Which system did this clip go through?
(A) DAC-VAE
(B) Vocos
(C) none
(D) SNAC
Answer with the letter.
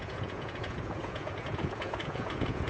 B